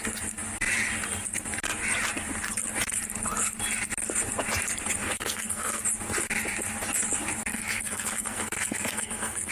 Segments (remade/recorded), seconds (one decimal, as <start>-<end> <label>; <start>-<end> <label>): 0.0-5.0 recorded; 5.0-5.8 remade; 5.8-7.5 recorded; 7.5-9.5 remade